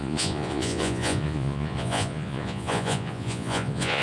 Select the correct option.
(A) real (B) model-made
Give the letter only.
B